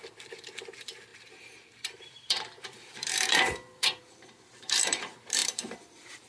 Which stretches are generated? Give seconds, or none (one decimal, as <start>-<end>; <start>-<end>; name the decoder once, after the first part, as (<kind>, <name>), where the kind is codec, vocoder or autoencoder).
0.0-6.3 (vocoder, BigVGAN v2)